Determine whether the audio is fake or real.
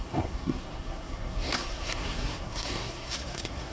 fake